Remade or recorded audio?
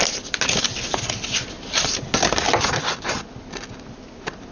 recorded